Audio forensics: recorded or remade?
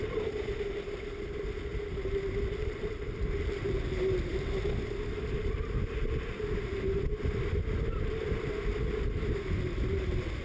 recorded